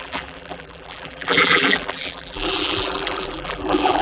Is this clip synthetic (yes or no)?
yes